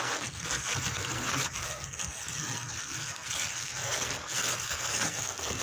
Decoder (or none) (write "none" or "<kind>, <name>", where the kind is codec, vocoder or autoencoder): codec, SNAC